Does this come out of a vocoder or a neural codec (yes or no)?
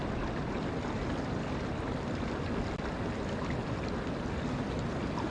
no